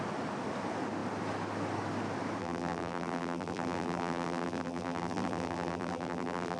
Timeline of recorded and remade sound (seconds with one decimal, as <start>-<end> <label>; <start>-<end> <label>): 0.0-2.4 recorded; 2.4-6.6 remade